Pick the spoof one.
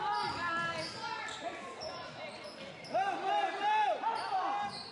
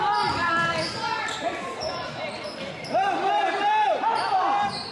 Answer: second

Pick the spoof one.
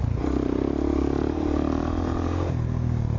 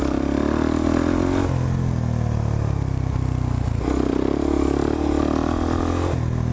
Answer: first